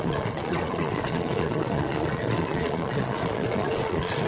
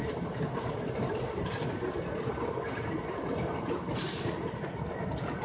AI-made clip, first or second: first